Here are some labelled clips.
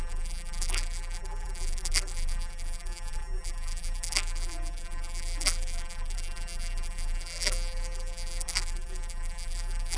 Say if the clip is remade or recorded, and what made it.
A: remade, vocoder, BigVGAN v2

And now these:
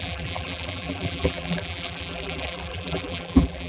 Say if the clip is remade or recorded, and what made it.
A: remade, vocoder, BigVGAN v2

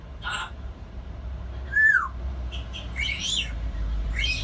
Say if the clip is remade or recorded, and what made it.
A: remade, vocoder, BigVGAN v2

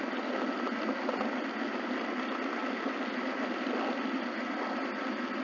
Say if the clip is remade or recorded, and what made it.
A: recorded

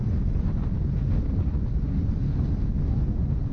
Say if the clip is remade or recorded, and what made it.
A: recorded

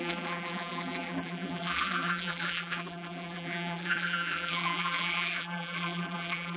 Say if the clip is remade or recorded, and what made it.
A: remade, vocoder, BigVGAN v2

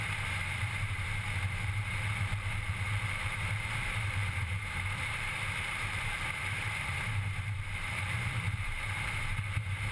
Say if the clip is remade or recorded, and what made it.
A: remade, vocoder, BigVGAN v2